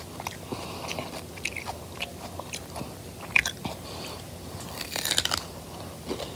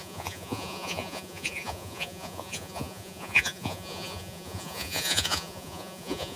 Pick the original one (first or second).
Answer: first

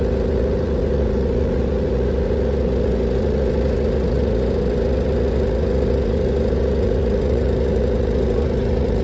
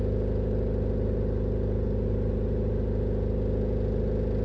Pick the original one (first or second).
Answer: second